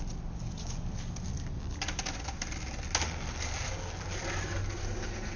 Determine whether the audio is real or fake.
real